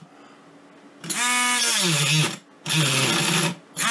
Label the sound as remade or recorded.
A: recorded